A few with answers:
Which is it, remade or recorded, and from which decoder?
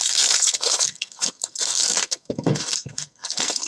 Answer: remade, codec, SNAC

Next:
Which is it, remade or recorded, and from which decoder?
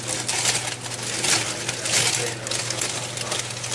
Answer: recorded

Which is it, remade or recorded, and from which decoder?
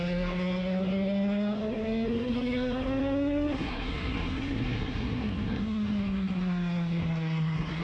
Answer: remade, codec, SNAC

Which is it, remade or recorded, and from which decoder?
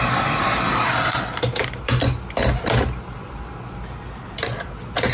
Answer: recorded